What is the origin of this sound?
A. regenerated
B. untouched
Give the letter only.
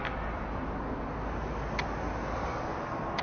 B